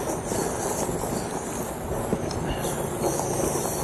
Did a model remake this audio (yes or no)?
no